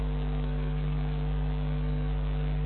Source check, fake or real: fake